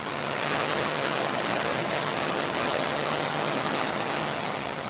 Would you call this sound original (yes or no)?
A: no